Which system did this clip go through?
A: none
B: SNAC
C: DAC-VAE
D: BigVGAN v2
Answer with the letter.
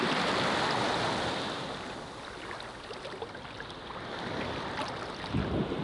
A